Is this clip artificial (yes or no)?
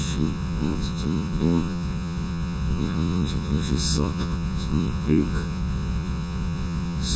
yes